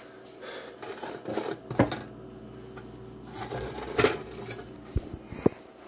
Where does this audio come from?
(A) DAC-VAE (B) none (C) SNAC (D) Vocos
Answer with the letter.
B